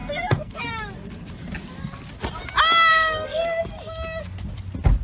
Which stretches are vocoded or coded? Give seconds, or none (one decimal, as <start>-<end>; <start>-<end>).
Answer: 0.0-0.7; 2.9-3.6